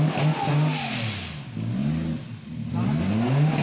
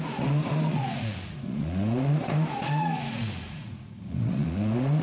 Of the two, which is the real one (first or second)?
first